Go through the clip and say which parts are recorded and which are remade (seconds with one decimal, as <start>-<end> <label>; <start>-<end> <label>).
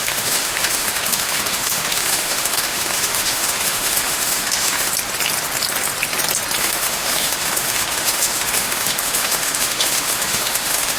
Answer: 0.0-4.9 remade; 4.9-6.6 recorded; 6.6-11.0 remade